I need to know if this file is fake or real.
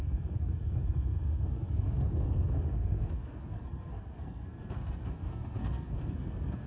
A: fake